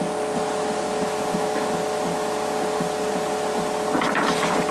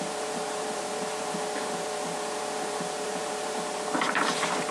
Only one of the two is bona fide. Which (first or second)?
first